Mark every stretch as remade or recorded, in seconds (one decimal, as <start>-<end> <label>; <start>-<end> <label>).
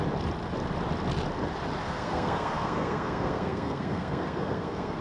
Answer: 0.0-1.8 recorded; 1.8-5.0 remade